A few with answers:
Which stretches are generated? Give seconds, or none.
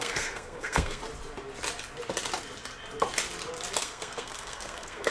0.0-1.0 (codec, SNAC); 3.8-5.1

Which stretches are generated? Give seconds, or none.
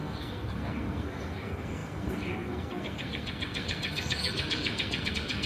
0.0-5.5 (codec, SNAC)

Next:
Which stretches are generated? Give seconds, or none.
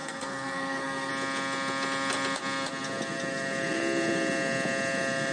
0.0-1.1 (codec, SNAC)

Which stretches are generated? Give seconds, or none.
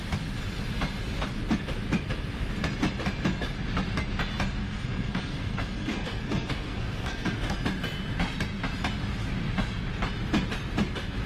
4.6-7.6 (codec, SNAC)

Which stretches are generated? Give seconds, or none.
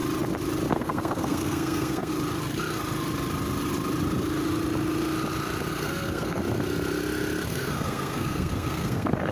0.7-2.1 (codec, SNAC); 5.7-6.4; 7.5-9.3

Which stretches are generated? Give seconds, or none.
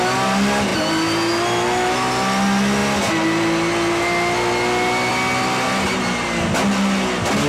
none